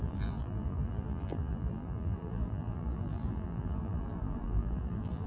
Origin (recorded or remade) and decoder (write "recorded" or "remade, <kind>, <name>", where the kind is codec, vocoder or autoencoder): remade, vocoder, BigVGAN v2